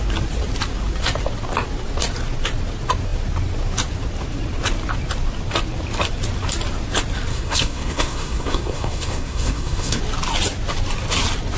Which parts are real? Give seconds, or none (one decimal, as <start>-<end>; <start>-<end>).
0.0-7.3; 10.0-11.6